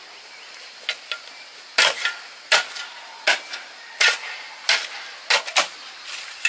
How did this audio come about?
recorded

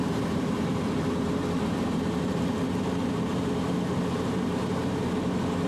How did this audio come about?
remade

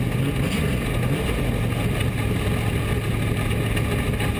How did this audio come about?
recorded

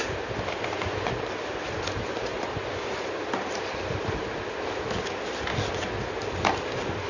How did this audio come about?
recorded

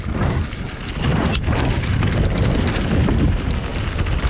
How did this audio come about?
recorded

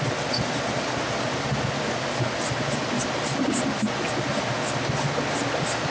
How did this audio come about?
recorded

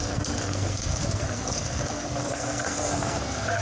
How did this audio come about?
remade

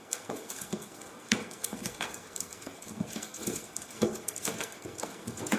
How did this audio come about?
remade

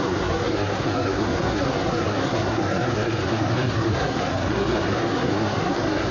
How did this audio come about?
remade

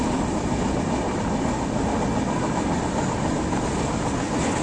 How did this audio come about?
remade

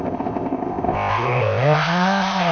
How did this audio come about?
remade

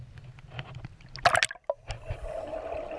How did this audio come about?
recorded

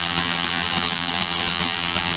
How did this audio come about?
remade